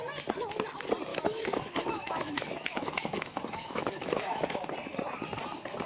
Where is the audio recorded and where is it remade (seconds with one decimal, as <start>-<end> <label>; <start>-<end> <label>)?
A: 0.0-1.1 recorded; 1.1-4.6 remade; 4.6-5.9 recorded